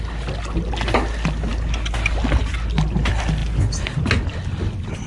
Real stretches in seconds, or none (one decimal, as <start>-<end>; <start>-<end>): 0.0-5.1